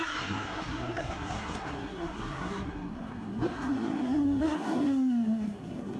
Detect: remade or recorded remade